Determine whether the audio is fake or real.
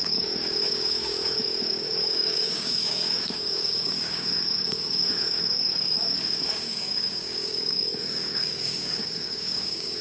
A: fake